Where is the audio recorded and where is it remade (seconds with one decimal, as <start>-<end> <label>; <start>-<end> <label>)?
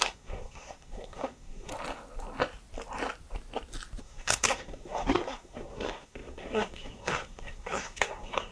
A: 0.0-1.7 remade; 1.7-4.0 recorded; 4.0-8.5 remade